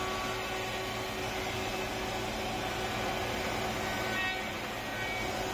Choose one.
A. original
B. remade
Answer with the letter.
A